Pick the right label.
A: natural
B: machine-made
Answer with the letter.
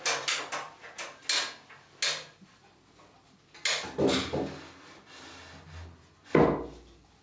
A